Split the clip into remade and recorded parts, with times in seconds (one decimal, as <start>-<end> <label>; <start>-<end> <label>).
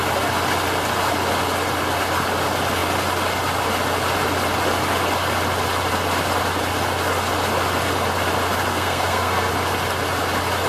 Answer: 0.0-8.7 recorded; 8.7-9.5 remade; 9.5-10.7 recorded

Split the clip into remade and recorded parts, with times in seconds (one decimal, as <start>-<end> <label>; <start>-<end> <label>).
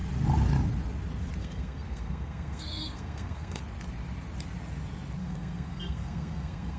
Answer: 0.0-1.4 recorded; 1.4-3.6 remade; 3.6-5.2 recorded; 5.2-6.8 remade